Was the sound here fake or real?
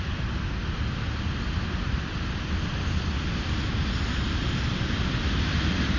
real